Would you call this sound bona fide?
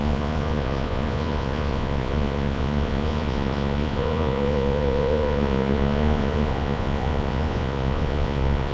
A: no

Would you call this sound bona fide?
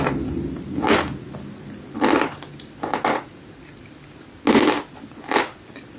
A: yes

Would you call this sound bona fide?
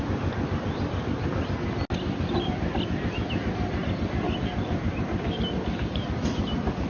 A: yes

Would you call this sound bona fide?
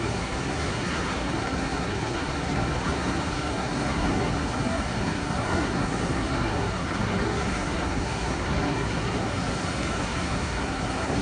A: no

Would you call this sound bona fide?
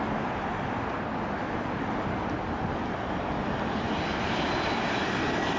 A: yes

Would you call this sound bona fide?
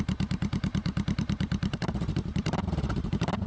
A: no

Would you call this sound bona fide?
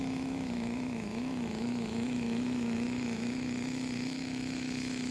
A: no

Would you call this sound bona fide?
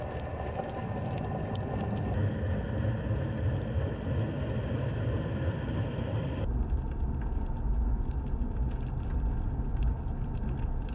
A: yes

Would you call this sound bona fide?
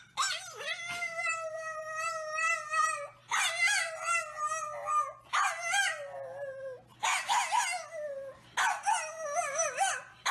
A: yes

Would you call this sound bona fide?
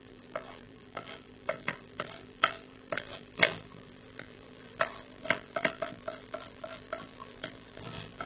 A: no